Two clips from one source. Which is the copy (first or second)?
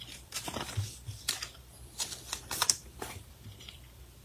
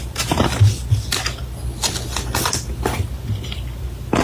first